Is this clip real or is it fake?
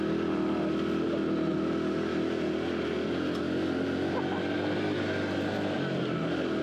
real